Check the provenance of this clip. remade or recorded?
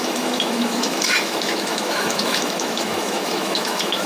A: remade